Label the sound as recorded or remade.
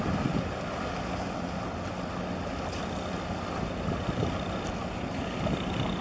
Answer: recorded